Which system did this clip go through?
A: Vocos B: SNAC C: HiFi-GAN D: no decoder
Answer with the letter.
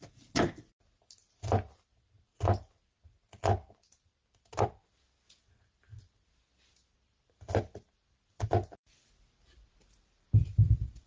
D